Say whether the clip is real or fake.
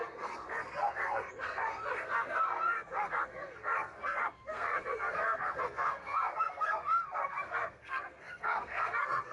fake